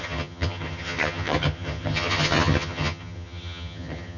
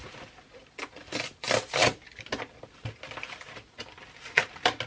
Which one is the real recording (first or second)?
second